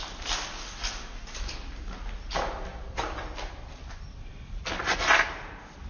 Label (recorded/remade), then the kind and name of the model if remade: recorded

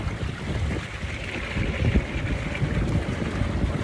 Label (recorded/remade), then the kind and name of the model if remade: recorded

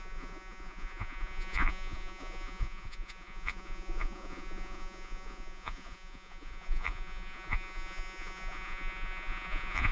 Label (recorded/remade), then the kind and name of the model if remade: remade, vocoder, Vocos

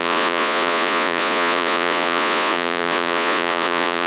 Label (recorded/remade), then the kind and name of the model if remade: remade, vocoder, Vocos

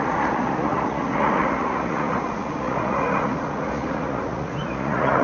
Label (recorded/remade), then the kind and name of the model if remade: remade, vocoder, Vocos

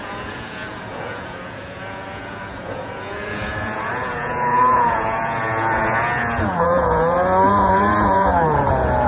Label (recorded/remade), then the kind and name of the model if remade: remade, vocoder, Vocos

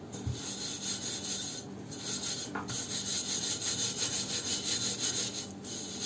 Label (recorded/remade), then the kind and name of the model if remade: recorded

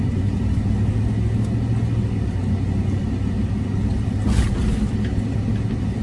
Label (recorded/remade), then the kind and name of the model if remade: recorded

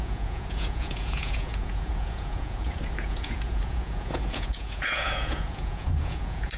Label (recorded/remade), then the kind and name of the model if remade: remade, vocoder, Vocos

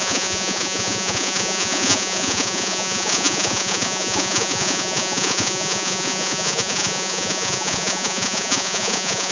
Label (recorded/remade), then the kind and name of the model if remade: remade, vocoder, Vocos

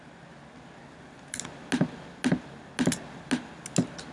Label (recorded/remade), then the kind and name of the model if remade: recorded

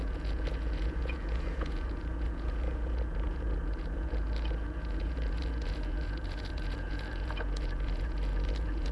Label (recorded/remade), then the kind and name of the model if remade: remade, vocoder, Vocos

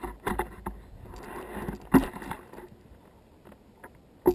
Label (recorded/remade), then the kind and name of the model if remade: recorded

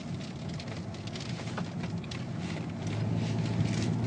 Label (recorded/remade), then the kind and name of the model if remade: recorded